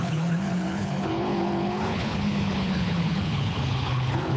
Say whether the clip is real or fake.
fake